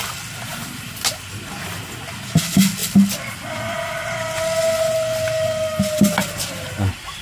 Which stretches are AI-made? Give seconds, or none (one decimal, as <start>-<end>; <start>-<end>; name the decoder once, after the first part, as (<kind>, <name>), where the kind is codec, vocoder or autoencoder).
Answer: none